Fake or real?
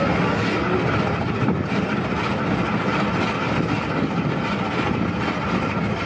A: real